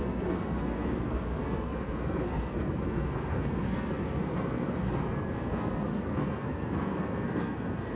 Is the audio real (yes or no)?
no